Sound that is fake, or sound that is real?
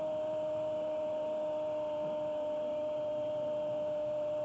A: real